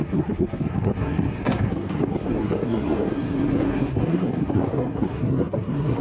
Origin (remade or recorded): remade